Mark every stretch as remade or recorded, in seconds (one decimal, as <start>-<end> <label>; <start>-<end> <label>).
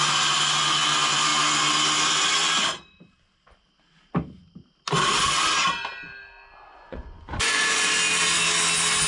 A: 0.0-6.7 recorded; 6.7-7.9 remade; 7.9-9.1 recorded